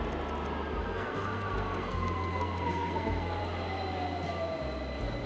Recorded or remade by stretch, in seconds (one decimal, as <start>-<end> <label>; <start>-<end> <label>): 0.0-0.8 recorded; 0.8-3.4 remade; 3.4-5.3 recorded